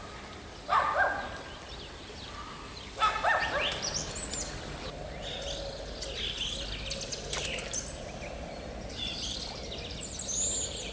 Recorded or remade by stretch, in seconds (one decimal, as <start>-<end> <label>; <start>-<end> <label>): 0.0-10.9 recorded